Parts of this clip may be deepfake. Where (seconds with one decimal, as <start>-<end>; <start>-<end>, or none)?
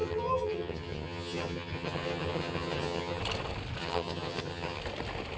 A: 0.0-3.2; 3.8-4.8